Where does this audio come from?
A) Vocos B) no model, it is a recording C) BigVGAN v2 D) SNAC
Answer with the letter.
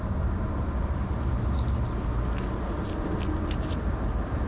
B